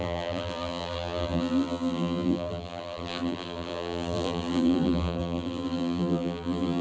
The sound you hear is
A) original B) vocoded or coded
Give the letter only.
B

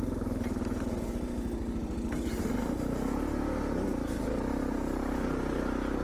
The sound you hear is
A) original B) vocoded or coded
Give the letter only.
A